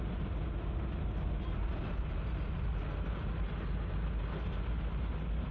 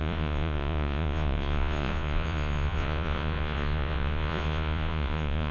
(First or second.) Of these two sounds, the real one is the first